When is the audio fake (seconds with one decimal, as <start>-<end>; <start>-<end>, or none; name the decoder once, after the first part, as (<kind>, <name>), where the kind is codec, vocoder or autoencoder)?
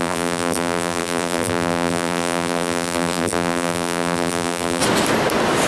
0.0-4.8 (vocoder, BigVGAN v2)